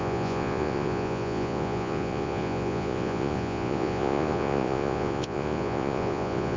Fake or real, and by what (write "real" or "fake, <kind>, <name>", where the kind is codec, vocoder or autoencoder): fake, vocoder, Vocos